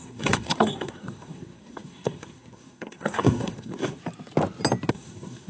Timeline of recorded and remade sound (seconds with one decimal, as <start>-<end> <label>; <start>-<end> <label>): 0.0-4.0 remade; 4.0-4.9 recorded; 4.9-5.5 remade